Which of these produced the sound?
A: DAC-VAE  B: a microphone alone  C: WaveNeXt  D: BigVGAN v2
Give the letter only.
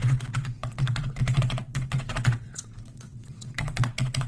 C